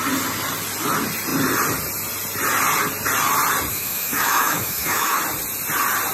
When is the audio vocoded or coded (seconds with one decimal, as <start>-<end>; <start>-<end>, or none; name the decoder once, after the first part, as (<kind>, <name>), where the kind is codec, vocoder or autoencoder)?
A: 3.7-5.2 (autoencoder, DAC-VAE)